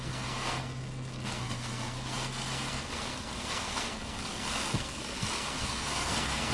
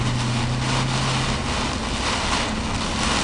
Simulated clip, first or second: first